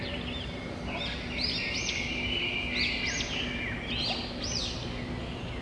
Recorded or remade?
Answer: recorded